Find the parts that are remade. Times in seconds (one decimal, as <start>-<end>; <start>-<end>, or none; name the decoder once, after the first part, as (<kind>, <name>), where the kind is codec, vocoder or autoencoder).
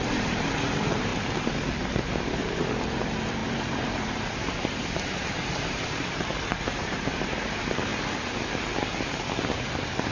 0.0-1.1 (vocoder, BigVGAN v2); 2.0-7.9; 9.4-10.1